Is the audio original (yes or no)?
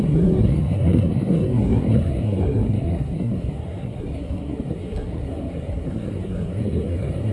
no